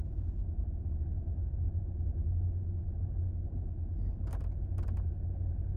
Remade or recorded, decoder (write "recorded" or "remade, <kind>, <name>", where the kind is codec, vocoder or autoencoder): recorded